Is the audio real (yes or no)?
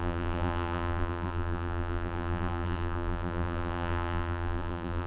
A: no